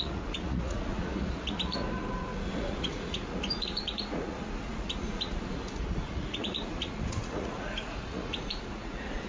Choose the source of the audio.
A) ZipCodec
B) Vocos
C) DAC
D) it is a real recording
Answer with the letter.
B